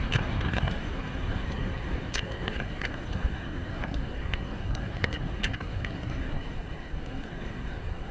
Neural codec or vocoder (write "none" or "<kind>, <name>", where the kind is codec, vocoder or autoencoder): codec, SNAC